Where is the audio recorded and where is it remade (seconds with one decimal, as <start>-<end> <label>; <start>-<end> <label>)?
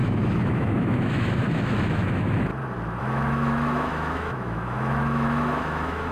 0.0-2.5 remade; 2.5-3.0 recorded; 3.0-6.1 remade